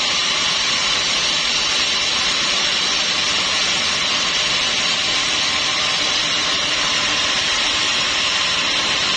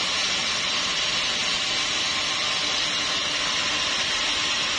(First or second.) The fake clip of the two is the first